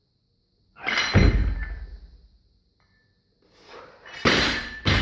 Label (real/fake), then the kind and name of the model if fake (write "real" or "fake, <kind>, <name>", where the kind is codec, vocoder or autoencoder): real